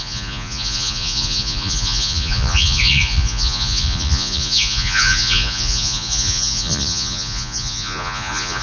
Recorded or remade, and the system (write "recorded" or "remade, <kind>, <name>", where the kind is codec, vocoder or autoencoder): remade, vocoder, Vocos